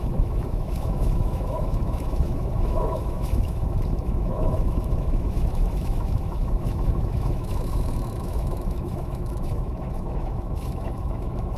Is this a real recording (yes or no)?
no